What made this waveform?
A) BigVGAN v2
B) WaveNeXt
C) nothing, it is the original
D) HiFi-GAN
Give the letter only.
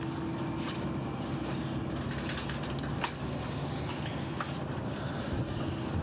C